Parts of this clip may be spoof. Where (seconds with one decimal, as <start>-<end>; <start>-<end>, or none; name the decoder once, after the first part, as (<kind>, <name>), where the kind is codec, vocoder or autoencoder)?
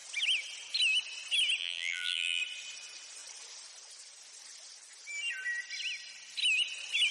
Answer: 1.6-2.4 (vocoder, BigVGAN v2)